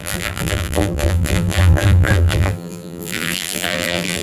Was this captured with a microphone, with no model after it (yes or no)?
no